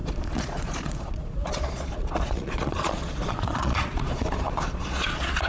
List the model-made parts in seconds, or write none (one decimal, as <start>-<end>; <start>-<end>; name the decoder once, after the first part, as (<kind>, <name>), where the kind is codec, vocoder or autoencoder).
0.0-5.5 (vocoder, Vocos)